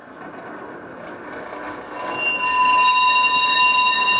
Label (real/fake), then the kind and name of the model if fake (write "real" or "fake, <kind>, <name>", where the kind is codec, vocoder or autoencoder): real